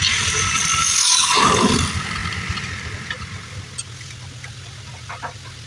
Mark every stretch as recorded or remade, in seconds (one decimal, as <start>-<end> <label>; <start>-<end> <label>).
0.0-0.8 recorded; 0.8-1.7 remade; 1.7-5.7 recorded